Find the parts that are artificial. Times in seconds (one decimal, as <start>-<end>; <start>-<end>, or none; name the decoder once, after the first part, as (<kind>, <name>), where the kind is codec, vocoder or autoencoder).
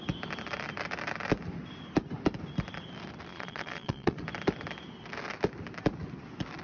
3.3-4.2 (vocoder, Vocos)